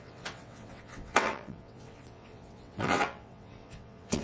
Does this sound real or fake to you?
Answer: fake